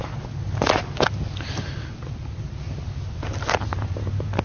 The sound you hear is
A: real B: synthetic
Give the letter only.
A